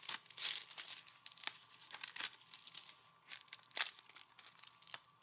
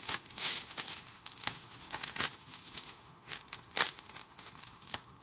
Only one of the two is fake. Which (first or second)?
second